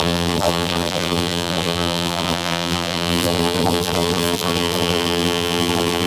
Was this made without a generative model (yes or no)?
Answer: no